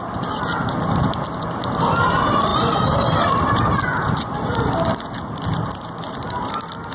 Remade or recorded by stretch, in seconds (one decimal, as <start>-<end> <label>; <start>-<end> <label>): 0.0-2.5 recorded; 2.5-3.5 remade; 3.5-3.9 recorded; 3.9-4.7 remade; 4.7-6.9 recorded